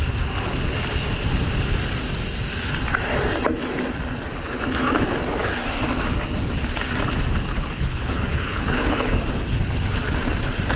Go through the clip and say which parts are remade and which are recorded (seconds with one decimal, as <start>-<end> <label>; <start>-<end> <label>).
0.0-7.5 recorded; 7.5-9.1 remade; 9.1-10.8 recorded